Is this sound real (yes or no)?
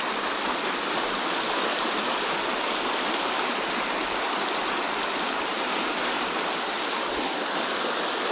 yes